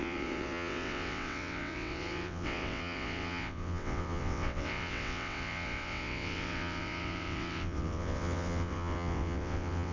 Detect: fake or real fake